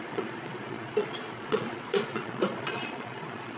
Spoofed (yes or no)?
yes